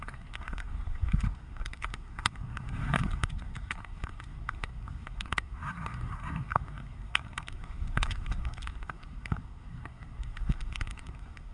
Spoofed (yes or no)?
yes